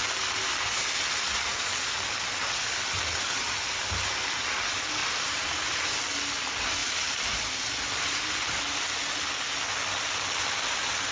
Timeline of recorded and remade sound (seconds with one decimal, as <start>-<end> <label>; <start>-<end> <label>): 0.0-5.0 recorded; 5.0-5.8 remade; 5.8-6.8 recorded; 6.8-7.5 remade; 7.5-11.1 recorded